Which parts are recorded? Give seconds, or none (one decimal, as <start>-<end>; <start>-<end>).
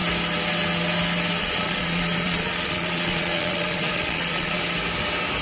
0.0-1.4; 4.6-5.4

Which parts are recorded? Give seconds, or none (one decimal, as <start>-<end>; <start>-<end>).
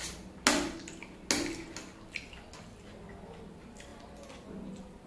0.0-5.1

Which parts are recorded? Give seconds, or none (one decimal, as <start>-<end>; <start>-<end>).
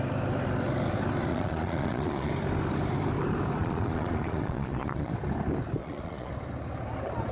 0.0-1.3; 2.3-3.6; 5.1-5.8; 6.3-7.3